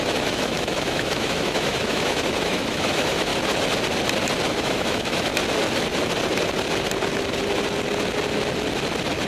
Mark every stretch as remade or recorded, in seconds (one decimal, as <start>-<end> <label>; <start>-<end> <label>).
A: 0.0-3.3 remade; 3.3-4.5 recorded; 4.5-5.3 remade; 5.3-9.3 recorded